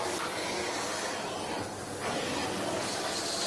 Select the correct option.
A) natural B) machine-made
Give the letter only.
A